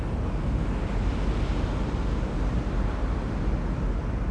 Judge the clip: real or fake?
real